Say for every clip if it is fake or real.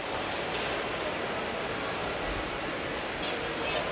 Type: real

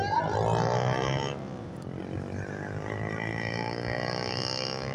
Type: real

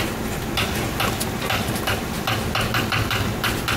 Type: real